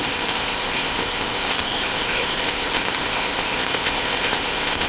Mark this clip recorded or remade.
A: remade